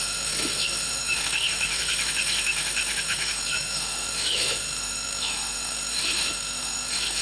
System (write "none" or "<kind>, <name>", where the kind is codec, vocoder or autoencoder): autoencoder, DAC-VAE